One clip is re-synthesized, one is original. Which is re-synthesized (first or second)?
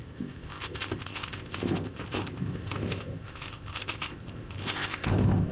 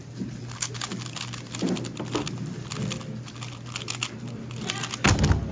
first